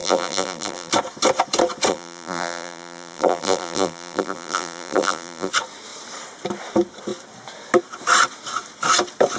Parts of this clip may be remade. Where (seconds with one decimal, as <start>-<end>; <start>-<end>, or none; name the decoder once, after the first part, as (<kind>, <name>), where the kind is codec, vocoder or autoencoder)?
0.0-0.9 (vocoder, BigVGAN v2); 1.9-5.5